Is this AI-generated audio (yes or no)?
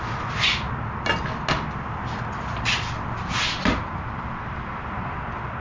no